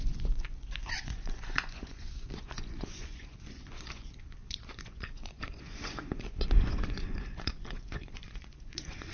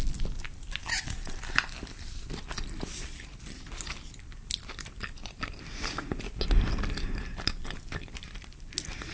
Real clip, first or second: second